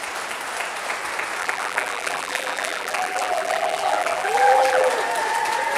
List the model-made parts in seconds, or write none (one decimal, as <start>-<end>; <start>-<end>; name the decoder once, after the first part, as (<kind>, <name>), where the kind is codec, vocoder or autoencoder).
1.4-4.9 (vocoder, BigVGAN v2)